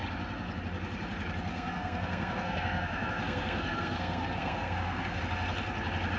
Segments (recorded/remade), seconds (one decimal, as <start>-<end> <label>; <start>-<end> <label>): 0.0-1.5 recorded; 1.5-5.2 remade; 5.2-6.2 recorded